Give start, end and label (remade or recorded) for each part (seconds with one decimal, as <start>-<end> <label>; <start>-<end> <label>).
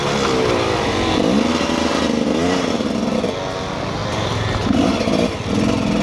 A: 0.0-6.0 recorded